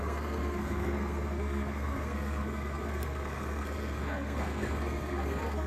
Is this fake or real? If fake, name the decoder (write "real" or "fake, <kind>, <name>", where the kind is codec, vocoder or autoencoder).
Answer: fake, codec, SNAC